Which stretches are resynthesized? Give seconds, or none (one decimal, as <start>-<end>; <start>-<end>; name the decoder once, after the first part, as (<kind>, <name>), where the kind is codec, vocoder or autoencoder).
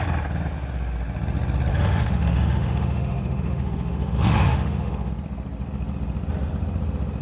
1.7-5.1 (autoencoder, DAC-VAE)